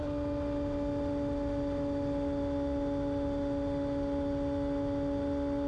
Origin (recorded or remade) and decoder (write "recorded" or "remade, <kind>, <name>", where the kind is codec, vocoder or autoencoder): recorded